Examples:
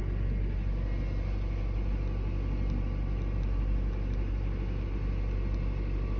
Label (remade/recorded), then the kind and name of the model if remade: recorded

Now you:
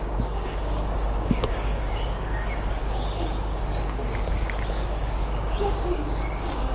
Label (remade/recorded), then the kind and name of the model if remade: remade, codec, DAC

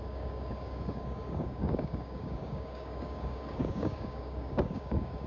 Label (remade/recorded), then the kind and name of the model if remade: remade, codec, DAC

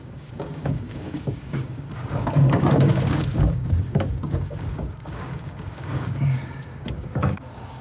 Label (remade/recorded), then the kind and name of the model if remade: remade, codec, DAC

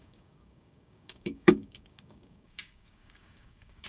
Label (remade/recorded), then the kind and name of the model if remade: remade, codec, DAC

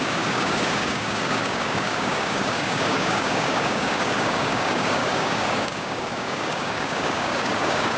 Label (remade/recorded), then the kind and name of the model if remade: remade, codec, DAC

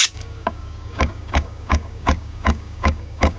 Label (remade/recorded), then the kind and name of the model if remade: remade, codec, DAC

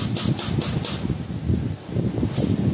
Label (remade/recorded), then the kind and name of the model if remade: recorded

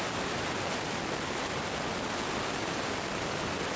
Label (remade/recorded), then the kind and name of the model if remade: recorded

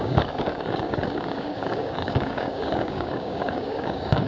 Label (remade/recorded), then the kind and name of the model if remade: remade, codec, DAC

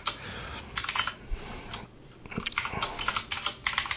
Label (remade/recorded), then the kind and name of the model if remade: recorded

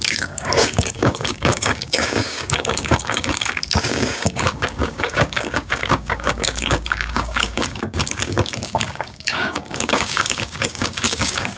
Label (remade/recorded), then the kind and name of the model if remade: remade, codec, DAC